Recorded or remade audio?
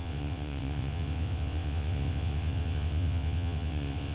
remade